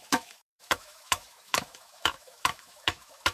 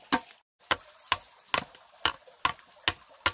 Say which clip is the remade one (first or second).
first